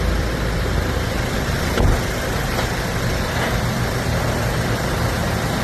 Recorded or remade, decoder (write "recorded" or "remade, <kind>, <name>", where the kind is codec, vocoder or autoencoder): remade, vocoder, BigVGAN v2